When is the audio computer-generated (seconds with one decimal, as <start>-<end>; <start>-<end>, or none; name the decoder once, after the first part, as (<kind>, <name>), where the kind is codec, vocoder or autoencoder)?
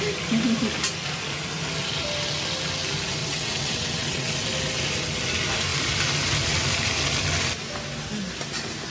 3.2-4.3 (vocoder, WaveNeXt)